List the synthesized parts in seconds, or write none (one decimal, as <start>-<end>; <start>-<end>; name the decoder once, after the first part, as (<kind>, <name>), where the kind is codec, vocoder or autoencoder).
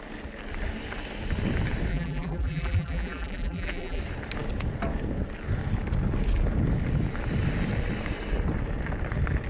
1.9-4.0 (vocoder, BigVGAN v2)